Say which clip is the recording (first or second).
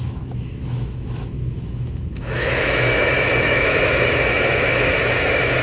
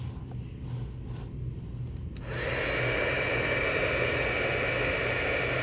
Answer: second